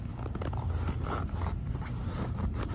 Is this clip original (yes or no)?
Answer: yes